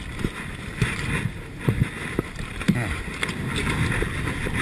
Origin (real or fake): real